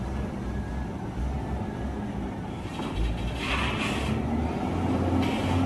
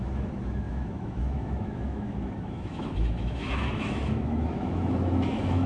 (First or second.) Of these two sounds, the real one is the first